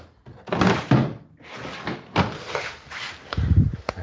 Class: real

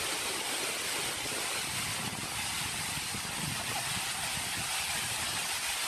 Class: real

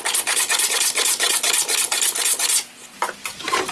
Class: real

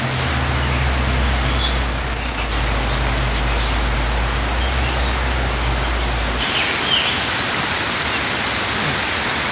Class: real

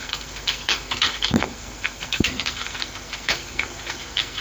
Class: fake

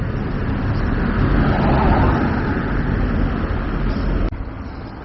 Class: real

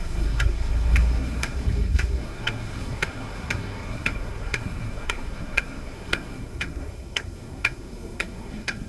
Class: fake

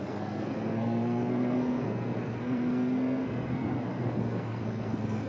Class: fake